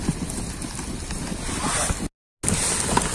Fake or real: real